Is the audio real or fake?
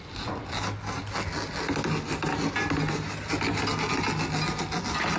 real